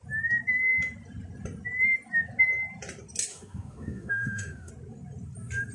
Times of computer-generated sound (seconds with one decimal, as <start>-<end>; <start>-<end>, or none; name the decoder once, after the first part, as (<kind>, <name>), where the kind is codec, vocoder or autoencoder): 3.3-4.7 (autoencoder, DAC-VAE)